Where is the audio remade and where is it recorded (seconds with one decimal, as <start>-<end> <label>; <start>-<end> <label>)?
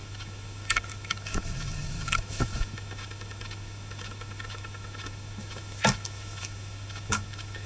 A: 0.0-7.7 remade